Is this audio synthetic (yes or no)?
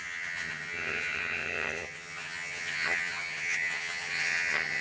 yes